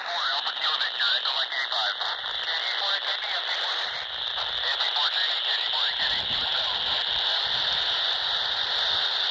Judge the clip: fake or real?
real